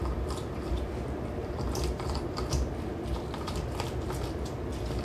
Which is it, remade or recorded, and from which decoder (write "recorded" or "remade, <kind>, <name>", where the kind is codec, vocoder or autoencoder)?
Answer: recorded